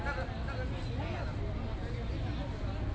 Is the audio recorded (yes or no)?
yes